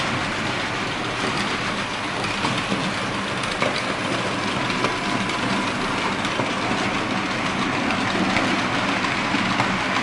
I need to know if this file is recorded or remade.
recorded